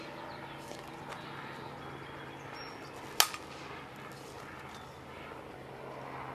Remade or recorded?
recorded